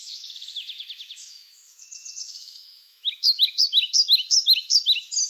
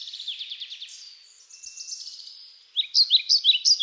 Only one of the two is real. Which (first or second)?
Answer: second